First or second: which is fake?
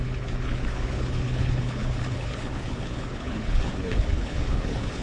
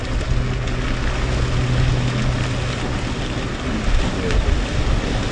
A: first